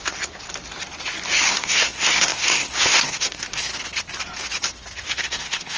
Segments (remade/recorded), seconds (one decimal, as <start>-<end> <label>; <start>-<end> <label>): 0.0-1.5 recorded; 1.5-3.7 remade; 3.7-5.1 recorded; 5.1-5.8 remade